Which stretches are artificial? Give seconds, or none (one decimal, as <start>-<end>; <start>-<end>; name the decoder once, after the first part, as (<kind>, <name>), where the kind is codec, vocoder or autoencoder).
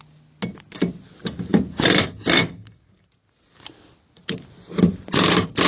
none